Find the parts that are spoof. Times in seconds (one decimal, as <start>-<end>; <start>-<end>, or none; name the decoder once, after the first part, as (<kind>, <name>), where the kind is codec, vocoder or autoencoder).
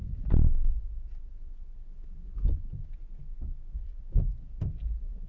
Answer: none